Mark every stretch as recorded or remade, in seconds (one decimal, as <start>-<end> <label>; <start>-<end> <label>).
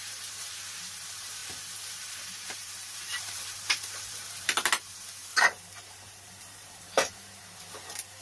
0.0-8.2 remade